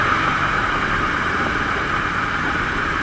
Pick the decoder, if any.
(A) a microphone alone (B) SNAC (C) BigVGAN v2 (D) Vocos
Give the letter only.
C